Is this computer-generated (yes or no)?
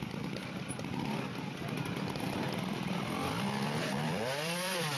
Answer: yes